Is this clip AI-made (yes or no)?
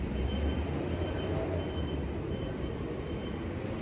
no